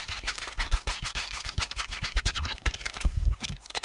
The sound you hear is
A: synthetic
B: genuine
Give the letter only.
A